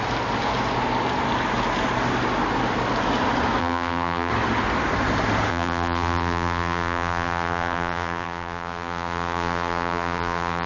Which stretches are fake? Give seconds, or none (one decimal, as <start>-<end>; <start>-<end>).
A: 3.6-4.3; 5.5-10.7